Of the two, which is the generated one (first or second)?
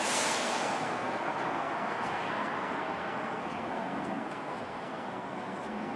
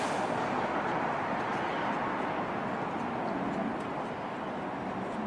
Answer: first